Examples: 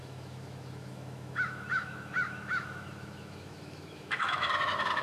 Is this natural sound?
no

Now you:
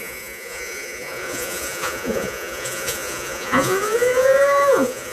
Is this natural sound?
no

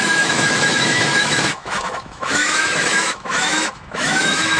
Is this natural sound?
no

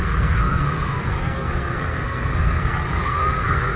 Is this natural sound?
no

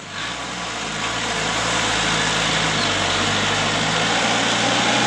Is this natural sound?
yes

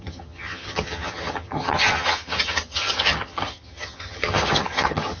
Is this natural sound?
no